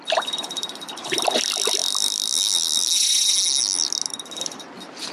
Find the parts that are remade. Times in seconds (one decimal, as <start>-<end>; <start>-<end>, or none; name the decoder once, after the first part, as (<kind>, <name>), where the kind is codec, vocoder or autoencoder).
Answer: 0.0-1.8 (vocoder, BigVGAN v2); 4.1-5.1